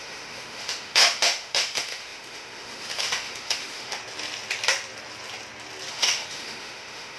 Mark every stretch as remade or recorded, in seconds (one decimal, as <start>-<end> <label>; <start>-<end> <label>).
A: 0.0-4.0 remade; 4.0-5.9 recorded; 5.9-7.2 remade